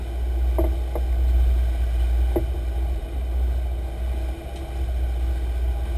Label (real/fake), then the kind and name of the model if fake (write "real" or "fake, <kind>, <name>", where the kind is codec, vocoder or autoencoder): real